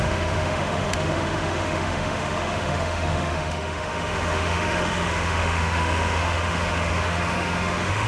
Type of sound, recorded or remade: remade